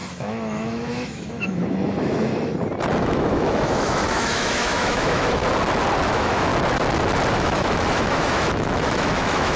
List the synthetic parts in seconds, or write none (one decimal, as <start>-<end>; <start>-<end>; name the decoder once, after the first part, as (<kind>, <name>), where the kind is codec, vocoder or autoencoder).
0.0-2.3 (autoencoder, DAC-VAE); 3.0-5.4; 6.1-6.5; 7.3-9.6